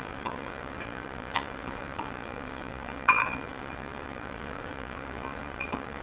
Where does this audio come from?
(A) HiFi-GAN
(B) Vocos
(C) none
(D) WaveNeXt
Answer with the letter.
D